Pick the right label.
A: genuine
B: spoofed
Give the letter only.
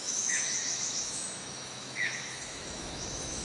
B